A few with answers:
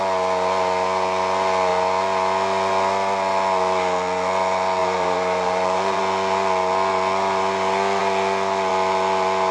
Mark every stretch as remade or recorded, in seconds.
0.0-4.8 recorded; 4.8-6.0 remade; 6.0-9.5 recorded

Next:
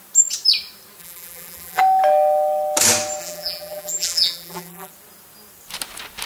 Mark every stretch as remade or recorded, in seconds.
0.0-1.0 recorded; 1.0-1.8 remade; 1.8-3.2 recorded; 3.2-4.9 remade; 4.9-6.3 recorded

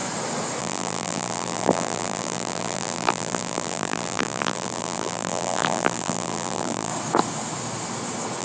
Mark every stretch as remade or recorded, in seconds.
0.0-0.6 recorded; 0.6-6.9 remade; 6.9-8.4 recorded

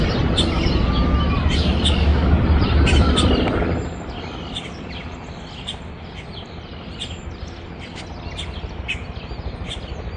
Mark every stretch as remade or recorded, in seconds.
0.0-2.1 recorded; 2.1-5.0 remade; 5.0-10.2 recorded

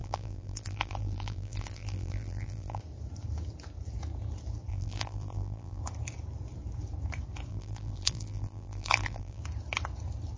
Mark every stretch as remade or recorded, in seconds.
0.0-2.8 remade; 2.8-4.7 recorded; 4.7-5.8 remade; 5.8-7.5 recorded; 7.5-9.4 remade; 9.4-10.4 recorded

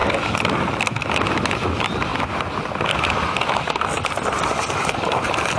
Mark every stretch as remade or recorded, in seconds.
0.0-5.6 recorded